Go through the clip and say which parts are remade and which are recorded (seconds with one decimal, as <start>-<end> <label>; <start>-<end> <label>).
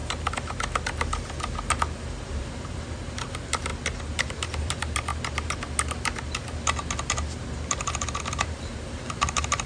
0.0-2.3 recorded; 2.3-3.7 remade; 3.7-4.3 recorded; 4.3-5.1 remade; 5.1-8.2 recorded; 8.2-9.7 remade